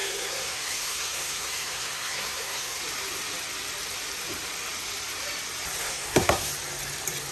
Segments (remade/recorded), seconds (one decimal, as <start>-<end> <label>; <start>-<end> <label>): 0.0-2.8 remade; 2.8-5.8 recorded; 5.8-6.5 remade; 6.5-7.3 recorded